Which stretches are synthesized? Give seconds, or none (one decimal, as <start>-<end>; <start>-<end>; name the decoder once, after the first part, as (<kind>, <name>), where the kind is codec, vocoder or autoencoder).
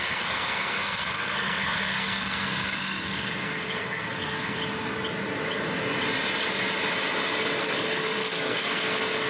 0.0-4.6 (codec, SNAC); 7.6-9.3